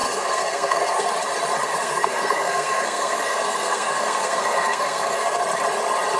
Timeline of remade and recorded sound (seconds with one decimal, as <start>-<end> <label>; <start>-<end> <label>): 0.0-1.1 remade; 1.1-1.7 recorded; 1.7-5.4 remade; 5.4-6.2 recorded